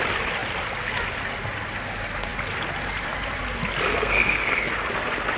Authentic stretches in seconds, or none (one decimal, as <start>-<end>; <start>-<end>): 0.0-3.9; 4.6-5.4

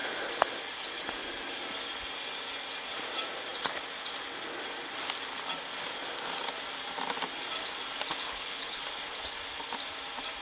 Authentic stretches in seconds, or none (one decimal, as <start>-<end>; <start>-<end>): 0.0-8.1; 8.8-10.4